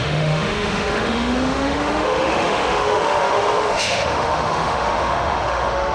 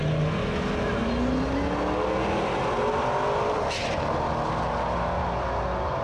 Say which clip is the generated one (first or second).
first